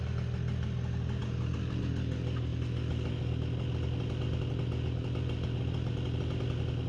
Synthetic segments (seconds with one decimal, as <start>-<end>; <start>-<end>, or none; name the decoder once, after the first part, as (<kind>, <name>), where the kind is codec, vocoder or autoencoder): none

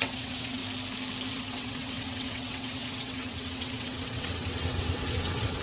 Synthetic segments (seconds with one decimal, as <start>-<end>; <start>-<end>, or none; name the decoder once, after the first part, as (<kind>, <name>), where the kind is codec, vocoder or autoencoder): 0.0-0.6 (vocoder, WaveNeXt); 1.3-5.6

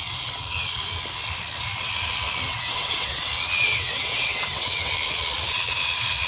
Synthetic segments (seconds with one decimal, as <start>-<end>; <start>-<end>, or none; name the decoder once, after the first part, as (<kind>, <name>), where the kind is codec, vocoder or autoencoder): 2.5-3.3 (vocoder, WaveNeXt); 3.7-4.9

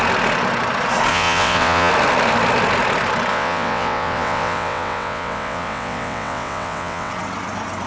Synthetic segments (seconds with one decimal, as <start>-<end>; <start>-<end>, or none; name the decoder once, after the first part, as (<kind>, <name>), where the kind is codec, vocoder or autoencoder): 1.1-1.9 (vocoder, WaveNeXt); 3.3-7.1

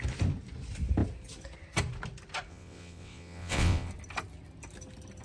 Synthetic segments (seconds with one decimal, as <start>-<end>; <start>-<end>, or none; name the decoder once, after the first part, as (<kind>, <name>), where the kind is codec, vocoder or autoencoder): 2.5-3.9 (vocoder, WaveNeXt)

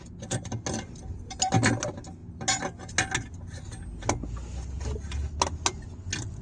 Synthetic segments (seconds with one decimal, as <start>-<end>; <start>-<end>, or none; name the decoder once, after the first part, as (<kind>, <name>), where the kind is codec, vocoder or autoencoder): none